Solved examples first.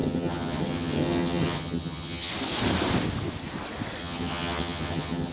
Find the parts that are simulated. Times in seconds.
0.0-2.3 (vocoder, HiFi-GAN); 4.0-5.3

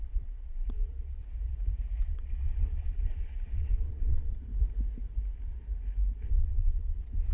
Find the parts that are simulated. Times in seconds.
0.0-1.2 (vocoder, WaveNeXt); 2.0-4.5; 6.3-7.3

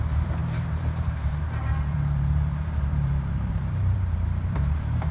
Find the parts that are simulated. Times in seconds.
0.0-5.1 (vocoder, BigVGAN v2)

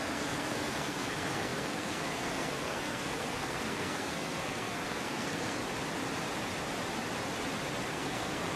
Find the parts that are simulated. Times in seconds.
0.0-5.6 (codec, SNAC); 7.9-8.6

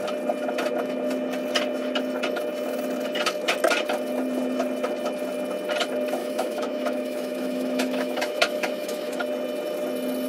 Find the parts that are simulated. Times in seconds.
6.2-9.2 (autoencoder, DAC-VAE)

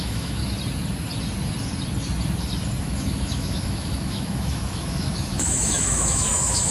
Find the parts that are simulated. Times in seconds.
0.0-0.4 (autoencoder, DAC-VAE); 2.8-6.7

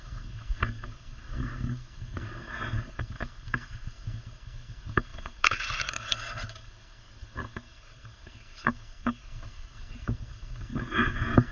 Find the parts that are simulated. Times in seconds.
0.0-11.5 (codec, SNAC)